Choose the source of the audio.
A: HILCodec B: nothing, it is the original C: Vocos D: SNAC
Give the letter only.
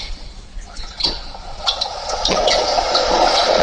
C